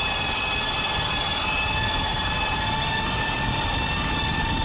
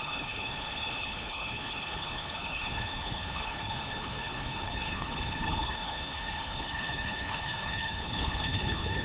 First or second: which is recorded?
first